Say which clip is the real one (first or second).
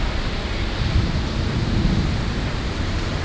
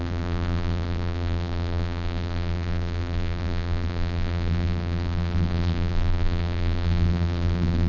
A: first